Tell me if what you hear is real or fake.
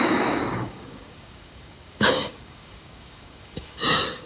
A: fake